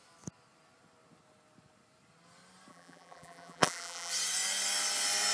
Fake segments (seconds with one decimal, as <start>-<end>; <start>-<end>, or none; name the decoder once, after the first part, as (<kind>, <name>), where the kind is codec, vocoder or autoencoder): 2.7-4.1 (vocoder, BigVGAN v2)